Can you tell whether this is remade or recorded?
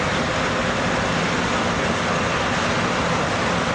recorded